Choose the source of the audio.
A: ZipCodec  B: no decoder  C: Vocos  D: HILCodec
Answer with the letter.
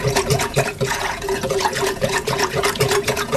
C